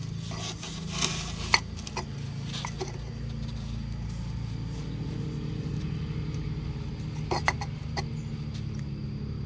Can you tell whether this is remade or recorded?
recorded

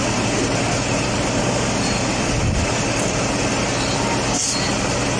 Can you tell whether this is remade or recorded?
recorded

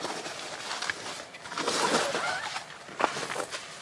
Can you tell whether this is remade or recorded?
recorded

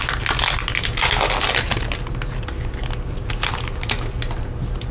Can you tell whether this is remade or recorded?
recorded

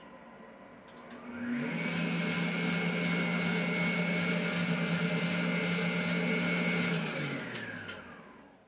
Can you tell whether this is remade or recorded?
recorded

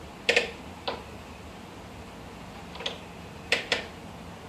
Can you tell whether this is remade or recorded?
recorded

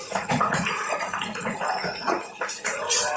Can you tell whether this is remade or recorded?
remade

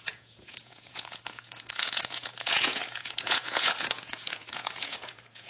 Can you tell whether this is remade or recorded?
remade